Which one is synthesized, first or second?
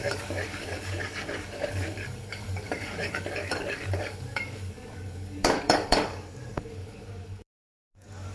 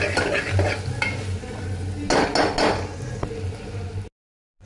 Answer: first